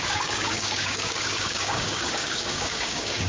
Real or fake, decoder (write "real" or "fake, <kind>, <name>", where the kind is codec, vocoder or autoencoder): fake, codec, DAC